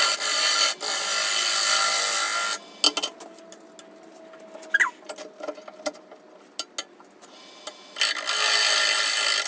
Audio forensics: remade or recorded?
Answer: recorded